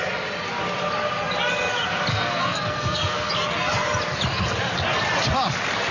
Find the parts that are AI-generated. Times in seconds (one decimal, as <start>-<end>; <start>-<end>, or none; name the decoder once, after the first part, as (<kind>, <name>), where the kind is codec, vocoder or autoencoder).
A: 2.1-3.3 (codec, SNAC)